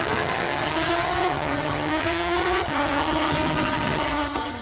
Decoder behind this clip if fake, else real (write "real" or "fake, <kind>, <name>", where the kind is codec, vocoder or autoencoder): fake, vocoder, HiFi-GAN